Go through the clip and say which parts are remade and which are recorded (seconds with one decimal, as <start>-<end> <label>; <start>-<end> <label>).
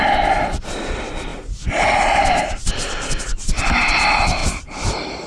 0.0-5.3 recorded